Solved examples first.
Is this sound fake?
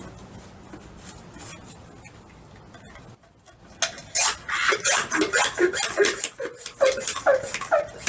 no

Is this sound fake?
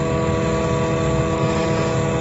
no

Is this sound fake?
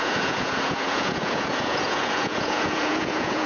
yes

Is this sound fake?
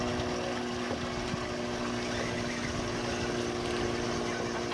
no